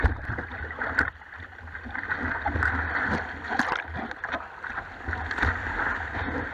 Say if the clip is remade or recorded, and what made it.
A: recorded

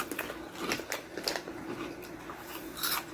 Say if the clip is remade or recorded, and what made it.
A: recorded